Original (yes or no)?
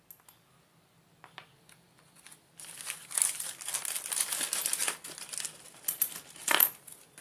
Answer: yes